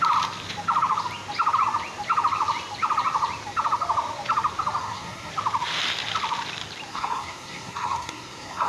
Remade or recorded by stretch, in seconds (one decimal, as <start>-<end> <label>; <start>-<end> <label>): 0.0-4.8 recorded; 4.8-5.3 remade; 5.3-6.9 recorded; 6.9-8.7 remade